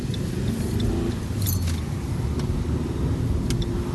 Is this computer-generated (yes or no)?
no